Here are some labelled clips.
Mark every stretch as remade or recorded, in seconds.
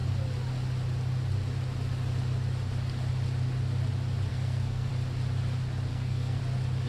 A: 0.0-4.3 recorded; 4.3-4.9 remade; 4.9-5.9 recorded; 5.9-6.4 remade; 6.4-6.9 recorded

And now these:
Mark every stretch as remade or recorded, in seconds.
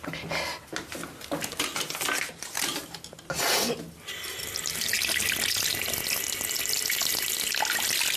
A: 0.0-8.2 recorded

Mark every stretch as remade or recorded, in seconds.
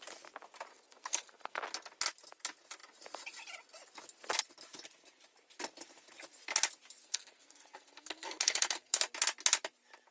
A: 0.0-0.7 recorded; 0.7-1.6 remade; 1.6-7.0 recorded; 7.0-9.0 remade; 9.0-10.1 recorded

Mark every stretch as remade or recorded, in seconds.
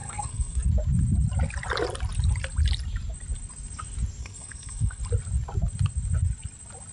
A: 0.0-0.7 remade; 0.7-4.2 recorded; 4.2-5.0 remade; 5.0-6.9 recorded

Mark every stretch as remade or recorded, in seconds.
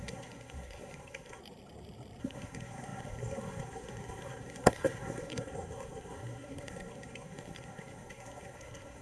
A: 0.0-1.4 remade; 1.4-2.2 recorded; 2.2-9.0 remade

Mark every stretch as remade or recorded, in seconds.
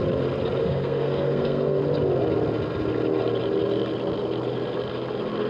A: 0.0-0.6 recorded; 0.6-1.8 remade; 1.8-5.5 recorded